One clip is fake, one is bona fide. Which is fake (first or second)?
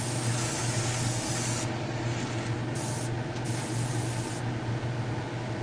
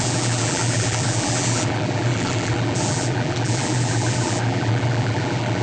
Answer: second